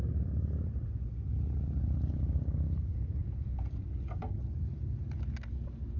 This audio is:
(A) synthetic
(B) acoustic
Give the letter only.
B